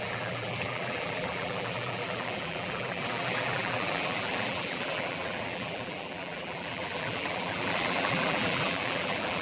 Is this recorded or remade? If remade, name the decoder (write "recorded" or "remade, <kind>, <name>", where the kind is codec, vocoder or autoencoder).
remade, vocoder, BigVGAN v2